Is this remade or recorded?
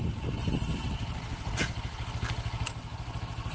recorded